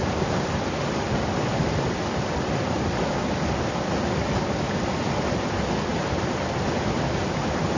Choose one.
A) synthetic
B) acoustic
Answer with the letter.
B